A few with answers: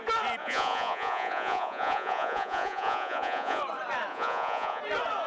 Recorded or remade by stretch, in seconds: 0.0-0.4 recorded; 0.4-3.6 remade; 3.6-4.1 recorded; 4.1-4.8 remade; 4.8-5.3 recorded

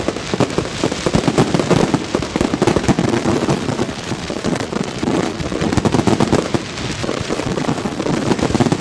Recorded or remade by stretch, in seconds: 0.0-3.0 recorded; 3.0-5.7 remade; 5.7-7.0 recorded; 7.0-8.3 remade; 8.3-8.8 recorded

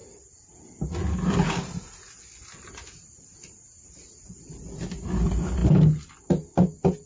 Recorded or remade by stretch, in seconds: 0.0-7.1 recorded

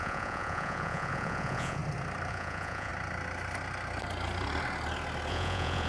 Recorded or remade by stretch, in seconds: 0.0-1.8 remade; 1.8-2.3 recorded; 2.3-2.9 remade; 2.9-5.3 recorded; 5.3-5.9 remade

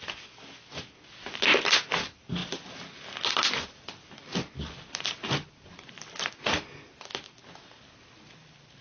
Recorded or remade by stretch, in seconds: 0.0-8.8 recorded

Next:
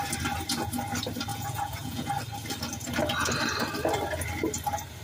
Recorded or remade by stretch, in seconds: 0.0-1.3 recorded; 1.3-2.1 remade; 2.1-5.0 recorded

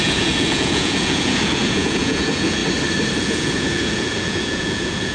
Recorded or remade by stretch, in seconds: 0.0-2.6 remade; 2.6-3.2 recorded; 3.2-5.1 remade

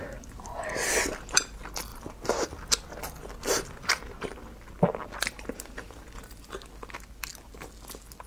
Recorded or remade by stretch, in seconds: 0.0-8.3 recorded